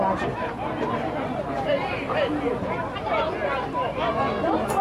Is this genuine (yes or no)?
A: yes